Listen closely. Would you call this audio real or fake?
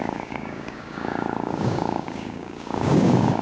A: fake